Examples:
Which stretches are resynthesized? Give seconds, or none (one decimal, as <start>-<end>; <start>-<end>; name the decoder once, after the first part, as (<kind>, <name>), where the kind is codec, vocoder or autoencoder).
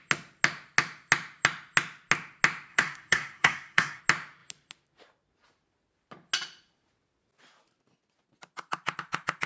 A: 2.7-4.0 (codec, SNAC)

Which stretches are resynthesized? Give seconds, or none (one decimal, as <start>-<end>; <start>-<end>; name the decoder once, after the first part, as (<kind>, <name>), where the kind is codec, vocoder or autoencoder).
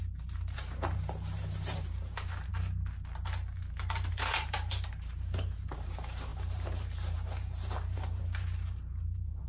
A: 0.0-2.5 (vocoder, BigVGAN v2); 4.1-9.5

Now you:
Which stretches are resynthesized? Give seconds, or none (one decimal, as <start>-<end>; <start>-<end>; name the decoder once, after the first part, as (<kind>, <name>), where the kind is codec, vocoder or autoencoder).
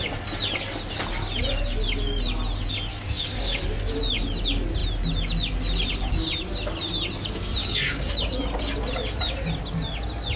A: 2.9-3.6 (codec, DAC); 7.6-8.1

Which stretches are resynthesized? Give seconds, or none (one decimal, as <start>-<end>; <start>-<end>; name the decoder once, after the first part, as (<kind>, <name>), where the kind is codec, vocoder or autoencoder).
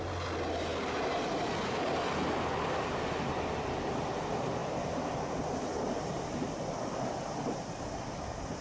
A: none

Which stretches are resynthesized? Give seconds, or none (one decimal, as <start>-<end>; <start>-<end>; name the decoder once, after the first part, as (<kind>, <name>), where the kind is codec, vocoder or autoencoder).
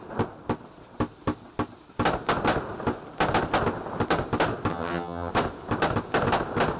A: 4.7-5.3 (vocoder, HiFi-GAN)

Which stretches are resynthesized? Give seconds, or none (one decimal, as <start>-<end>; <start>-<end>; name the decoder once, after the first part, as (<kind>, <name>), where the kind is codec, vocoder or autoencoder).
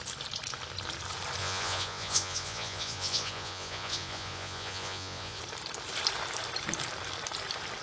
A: 1.4-5.4 (vocoder, Vocos)